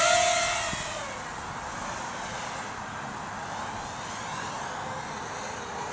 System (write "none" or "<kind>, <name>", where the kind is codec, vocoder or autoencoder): none